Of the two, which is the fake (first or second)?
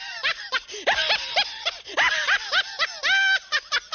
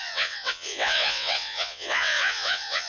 second